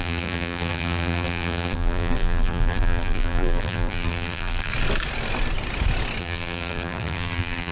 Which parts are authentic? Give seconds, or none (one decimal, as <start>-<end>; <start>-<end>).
4.7-6.2